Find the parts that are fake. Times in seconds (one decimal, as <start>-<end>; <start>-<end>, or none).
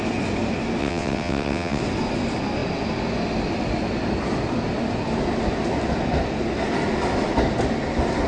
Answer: 0.8-1.8